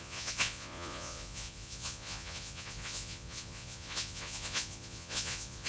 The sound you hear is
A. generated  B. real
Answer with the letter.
A